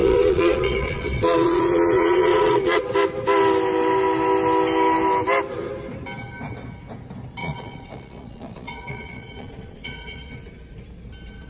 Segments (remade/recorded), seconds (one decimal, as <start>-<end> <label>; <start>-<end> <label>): 0.0-2.8 remade; 2.8-7.4 recorded; 7.4-10.3 remade; 10.3-11.5 recorded